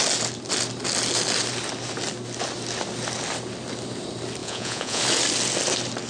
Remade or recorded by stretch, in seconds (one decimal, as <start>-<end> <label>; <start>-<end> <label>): 0.0-4.4 recorded; 4.4-5.0 remade; 5.0-6.1 recorded